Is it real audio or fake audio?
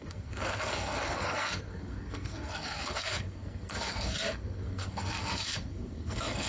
fake